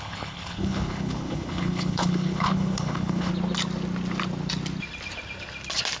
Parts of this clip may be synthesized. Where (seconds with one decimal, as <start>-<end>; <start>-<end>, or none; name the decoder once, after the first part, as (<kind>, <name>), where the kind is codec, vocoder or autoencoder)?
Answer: 0.0-3.3 (codec, HILCodec)